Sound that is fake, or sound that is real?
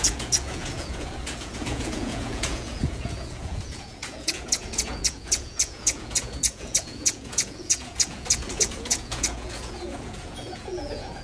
fake